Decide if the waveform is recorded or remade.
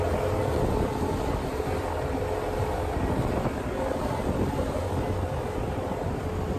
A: recorded